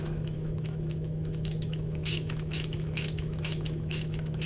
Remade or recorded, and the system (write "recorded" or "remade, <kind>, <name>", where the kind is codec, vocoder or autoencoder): remade, autoencoder, DAC-VAE